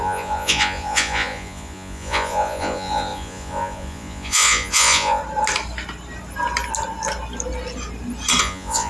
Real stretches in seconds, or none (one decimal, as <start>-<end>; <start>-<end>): 5.2-8.4

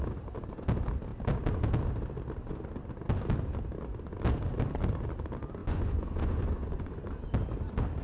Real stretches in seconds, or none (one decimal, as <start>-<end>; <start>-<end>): 0.0-5.6; 7.1-8.0

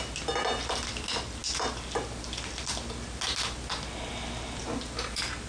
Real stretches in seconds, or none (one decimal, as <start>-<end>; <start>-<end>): 0.0-5.5

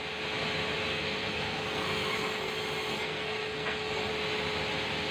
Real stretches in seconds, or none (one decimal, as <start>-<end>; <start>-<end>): 0.0-0.9; 2.5-2.9; 4.1-5.1